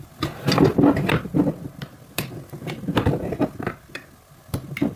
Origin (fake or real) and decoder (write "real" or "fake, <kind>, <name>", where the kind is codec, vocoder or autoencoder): real